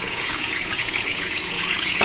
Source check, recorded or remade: remade